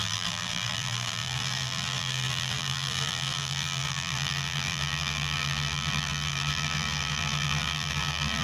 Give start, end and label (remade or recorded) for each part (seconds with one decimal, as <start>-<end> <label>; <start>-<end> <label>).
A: 0.0-8.4 remade

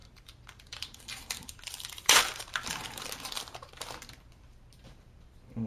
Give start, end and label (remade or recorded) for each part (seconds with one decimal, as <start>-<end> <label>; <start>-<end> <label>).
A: 0.0-3.4 remade; 3.4-5.7 recorded

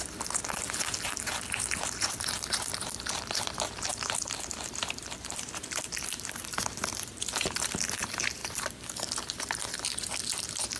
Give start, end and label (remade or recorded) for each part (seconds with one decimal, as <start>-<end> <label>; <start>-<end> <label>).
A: 0.0-3.9 recorded; 3.9-8.0 remade; 8.0-8.4 recorded; 8.4-9.7 remade; 9.7-10.8 recorded

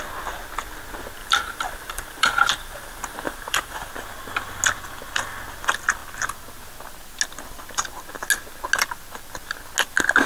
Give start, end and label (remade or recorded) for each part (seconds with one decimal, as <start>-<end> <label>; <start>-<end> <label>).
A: 0.0-1.2 recorded; 1.2-3.9 remade; 3.9-10.3 recorded

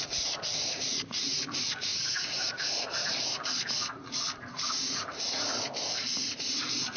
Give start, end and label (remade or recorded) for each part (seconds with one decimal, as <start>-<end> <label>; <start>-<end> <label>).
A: 0.0-7.0 remade

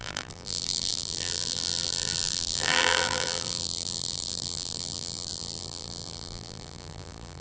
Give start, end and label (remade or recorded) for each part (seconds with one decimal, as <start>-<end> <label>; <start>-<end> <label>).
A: 0.0-7.4 remade

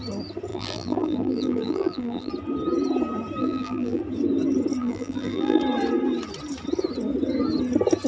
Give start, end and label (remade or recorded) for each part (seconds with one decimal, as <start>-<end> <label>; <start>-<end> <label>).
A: 0.0-0.5 recorded; 0.5-2.3 remade; 2.3-3.4 recorded; 3.4-4.0 remade; 4.0-4.8 recorded; 4.8-5.6 remade; 5.6-8.1 recorded

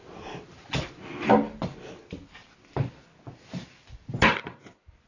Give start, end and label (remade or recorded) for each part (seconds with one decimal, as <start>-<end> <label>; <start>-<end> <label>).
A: 0.0-5.1 recorded